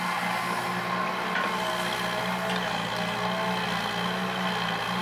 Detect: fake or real real